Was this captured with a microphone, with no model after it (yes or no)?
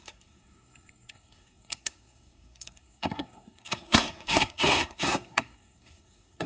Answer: no